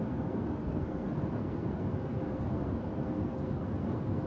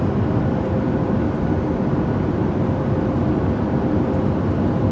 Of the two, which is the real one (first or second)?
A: second